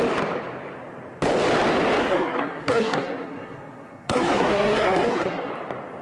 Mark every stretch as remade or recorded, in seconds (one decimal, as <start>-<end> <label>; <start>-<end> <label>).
0.0-2.0 recorded; 2.0-5.5 remade; 5.5-6.0 recorded